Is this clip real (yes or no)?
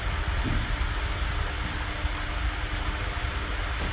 yes